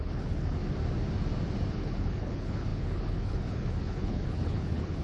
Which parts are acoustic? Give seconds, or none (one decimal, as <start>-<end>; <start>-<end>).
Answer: 0.6-1.7

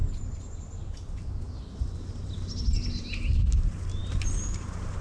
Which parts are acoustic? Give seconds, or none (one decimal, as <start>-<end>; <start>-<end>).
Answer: 0.0-5.0

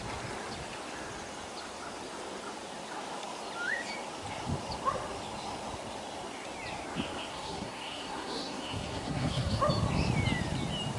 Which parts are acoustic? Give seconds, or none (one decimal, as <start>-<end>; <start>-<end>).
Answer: 0.0-7.3; 9.6-11.0

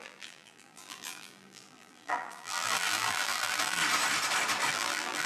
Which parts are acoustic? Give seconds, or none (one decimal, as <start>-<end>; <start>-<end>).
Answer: 3.8-4.7

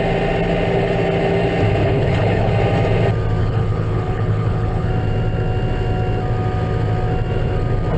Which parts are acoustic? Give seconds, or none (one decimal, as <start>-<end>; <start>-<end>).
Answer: 0.0-1.8; 2.5-3.4; 4.9-8.0

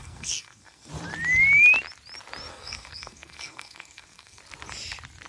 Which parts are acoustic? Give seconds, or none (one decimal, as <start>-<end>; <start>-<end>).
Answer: 0.9-2.5; 4.4-5.3